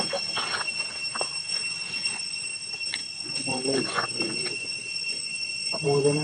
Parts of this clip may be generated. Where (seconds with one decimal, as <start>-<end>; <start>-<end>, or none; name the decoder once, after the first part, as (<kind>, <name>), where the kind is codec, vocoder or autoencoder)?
1.5-2.5 (vocoder, Vocos); 3.0-5.7